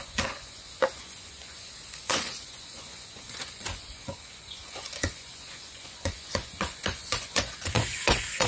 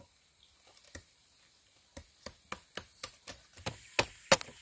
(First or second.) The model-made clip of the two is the first